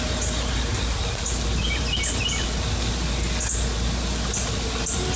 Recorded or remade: recorded